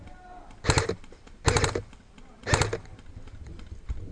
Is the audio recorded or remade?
recorded